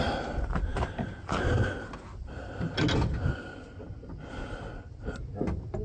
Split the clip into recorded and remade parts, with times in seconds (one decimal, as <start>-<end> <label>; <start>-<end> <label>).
0.0-5.8 recorded